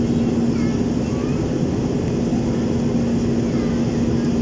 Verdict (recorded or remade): recorded